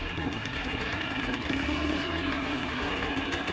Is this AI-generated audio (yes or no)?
yes